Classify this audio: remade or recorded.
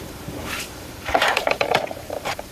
remade